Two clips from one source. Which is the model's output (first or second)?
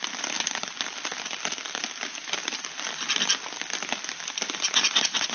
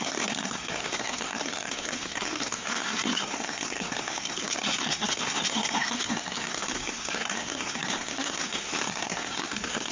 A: second